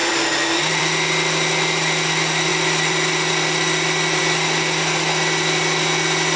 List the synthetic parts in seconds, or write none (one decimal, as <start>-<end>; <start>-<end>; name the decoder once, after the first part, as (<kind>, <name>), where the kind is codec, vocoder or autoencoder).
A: 0.0-0.8 (vocoder, BigVGAN v2); 2.5-4.2